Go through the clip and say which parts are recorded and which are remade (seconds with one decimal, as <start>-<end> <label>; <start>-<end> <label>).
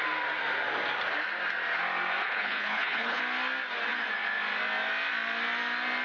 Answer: 0.0-2.2 recorded; 2.2-3.2 remade; 3.2-6.0 recorded